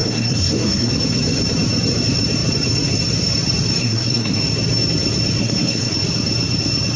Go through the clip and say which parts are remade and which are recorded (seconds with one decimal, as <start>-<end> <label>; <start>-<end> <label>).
0.0-0.9 remade; 0.9-3.8 recorded; 3.8-4.4 remade; 4.4-5.4 recorded; 5.4-5.9 remade; 5.9-7.0 recorded